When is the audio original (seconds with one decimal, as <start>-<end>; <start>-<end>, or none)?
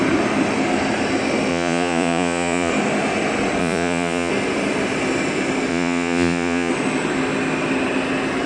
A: 0.0-1.5; 2.7-3.6; 4.3-5.7; 6.7-8.5